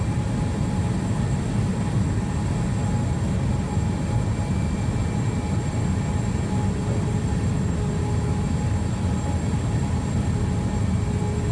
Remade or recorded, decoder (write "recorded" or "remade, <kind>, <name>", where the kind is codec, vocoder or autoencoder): recorded